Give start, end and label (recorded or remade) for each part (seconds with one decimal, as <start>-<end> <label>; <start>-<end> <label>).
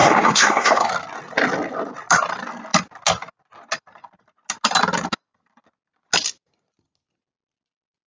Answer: 0.0-0.9 remade; 0.9-8.1 recorded